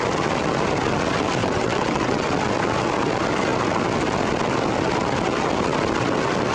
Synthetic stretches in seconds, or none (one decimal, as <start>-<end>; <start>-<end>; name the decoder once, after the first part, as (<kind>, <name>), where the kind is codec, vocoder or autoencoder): 1.4-2.3 (vocoder, WaveNeXt)